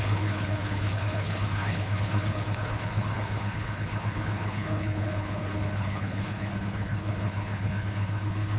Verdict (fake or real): fake